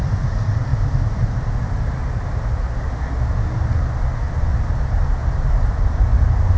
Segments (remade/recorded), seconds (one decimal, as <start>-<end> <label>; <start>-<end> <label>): 0.0-6.6 recorded